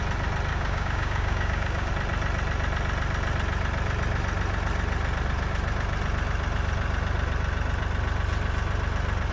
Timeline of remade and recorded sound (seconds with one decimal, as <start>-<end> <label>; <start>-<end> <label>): 0.0-0.5 recorded; 0.5-1.9 remade; 1.9-9.3 recorded